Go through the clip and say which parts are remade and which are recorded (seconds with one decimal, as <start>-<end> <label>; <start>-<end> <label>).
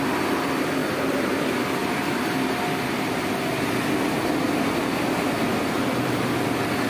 0.0-0.8 recorded; 0.8-1.3 remade; 1.3-1.8 recorded; 1.8-2.9 remade; 2.9-5.5 recorded; 5.5-6.9 remade